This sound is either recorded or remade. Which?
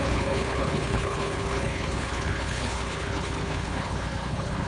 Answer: remade